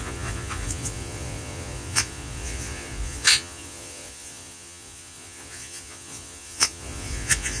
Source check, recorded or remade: remade